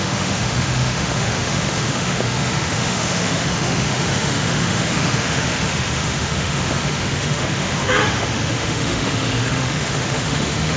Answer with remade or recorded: remade